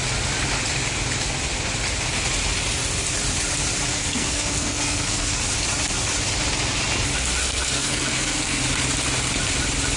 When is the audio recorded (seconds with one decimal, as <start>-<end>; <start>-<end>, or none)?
0.0-3.9; 5.4-7.4; 8.6-10.0